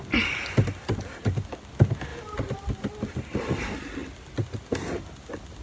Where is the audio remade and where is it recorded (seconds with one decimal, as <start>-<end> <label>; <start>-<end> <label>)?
0.0-5.6 recorded